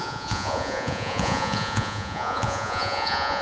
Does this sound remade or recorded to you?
remade